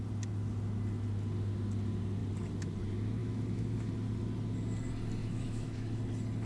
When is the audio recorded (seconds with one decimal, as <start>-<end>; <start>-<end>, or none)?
0.0-3.2; 3.9-5.2; 6.0-6.5